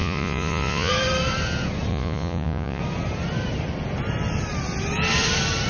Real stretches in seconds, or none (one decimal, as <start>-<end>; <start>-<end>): 0.9-1.9; 2.8-5.7